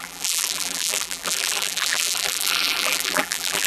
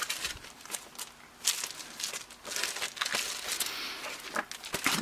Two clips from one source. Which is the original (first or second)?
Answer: second